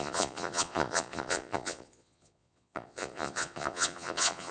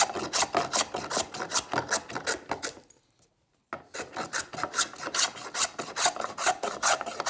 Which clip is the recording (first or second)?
second